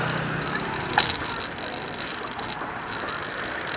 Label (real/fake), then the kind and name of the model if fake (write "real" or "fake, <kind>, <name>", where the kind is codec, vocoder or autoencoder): real